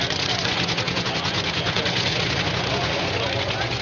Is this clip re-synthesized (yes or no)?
yes